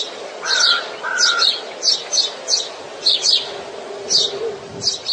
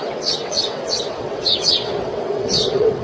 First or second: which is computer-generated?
second